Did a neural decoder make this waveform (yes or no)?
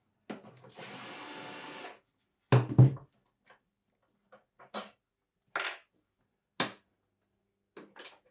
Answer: no